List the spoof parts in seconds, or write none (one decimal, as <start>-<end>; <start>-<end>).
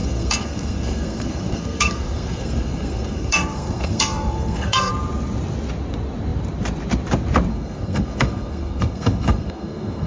0.0-4.9; 7.5-10.1